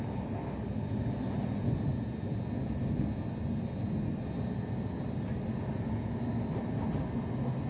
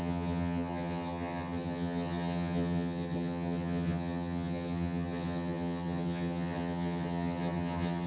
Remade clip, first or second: second